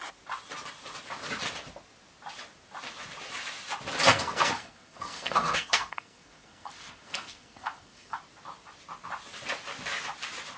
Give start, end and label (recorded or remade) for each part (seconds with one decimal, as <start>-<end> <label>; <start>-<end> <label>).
0.0-4.1 recorded; 4.1-8.2 remade; 8.2-10.6 recorded